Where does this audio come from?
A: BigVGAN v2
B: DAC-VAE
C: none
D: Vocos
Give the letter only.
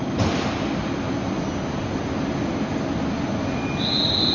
C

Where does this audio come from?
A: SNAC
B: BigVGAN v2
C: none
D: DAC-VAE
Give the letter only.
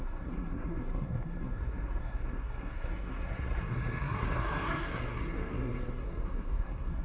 A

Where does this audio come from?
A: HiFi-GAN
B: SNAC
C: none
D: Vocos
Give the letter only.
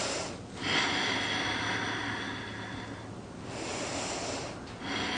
C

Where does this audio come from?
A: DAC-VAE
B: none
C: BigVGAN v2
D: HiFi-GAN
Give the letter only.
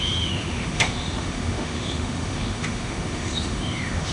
A